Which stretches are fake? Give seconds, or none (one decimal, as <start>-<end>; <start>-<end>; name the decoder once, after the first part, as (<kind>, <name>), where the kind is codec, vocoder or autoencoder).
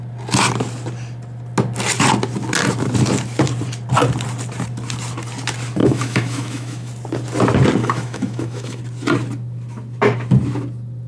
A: 5.8-6.9 (autoencoder, DAC-VAE); 7.8-8.8